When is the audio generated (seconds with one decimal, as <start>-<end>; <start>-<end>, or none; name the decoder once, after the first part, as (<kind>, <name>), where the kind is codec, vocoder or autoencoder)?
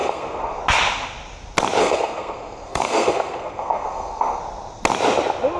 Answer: 0.0-0.6 (codec, SNAC); 1.8-4.4